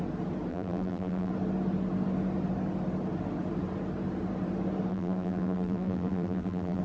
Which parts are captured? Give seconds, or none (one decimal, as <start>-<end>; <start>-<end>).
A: 0.0-0.5; 1.3-4.9